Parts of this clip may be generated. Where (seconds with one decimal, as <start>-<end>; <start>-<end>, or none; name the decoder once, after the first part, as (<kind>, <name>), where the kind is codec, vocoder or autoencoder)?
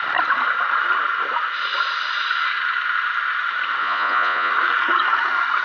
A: 3.8-4.5 (vocoder, Vocos)